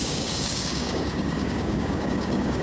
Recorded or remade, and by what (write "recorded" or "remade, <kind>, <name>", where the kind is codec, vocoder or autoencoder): remade, codec, DAC